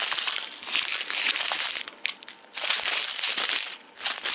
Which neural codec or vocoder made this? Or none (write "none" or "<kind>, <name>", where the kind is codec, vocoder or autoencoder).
none